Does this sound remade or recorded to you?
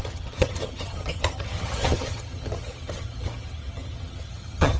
remade